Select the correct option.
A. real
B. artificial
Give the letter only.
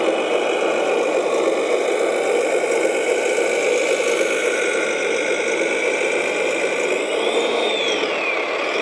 A